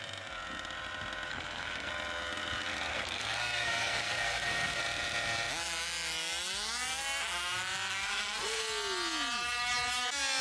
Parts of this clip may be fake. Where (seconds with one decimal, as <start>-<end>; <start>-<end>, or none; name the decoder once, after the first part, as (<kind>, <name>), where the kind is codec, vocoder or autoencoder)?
1.3-1.9 (codec, SNAC); 2.9-4.8; 7.9-8.6